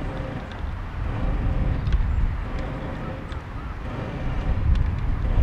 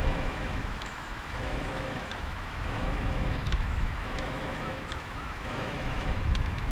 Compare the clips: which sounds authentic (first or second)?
first